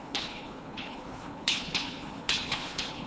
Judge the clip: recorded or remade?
remade